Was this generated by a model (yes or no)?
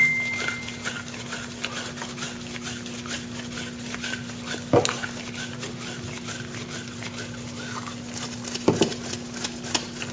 no